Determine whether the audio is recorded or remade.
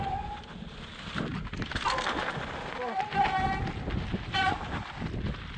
recorded